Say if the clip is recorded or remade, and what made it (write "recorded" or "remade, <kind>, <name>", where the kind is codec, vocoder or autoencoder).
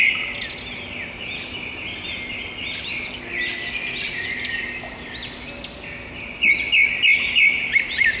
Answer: recorded